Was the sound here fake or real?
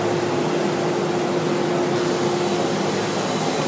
real